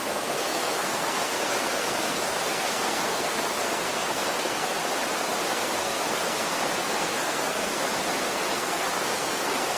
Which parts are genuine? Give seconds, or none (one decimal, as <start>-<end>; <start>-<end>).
4.8-5.5